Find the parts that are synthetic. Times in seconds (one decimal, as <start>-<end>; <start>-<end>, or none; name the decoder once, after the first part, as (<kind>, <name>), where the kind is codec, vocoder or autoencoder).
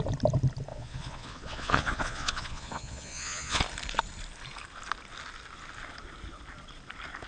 0.7-3.6 (vocoder, Vocos)